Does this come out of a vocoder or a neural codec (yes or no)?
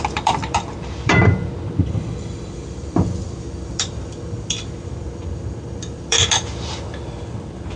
yes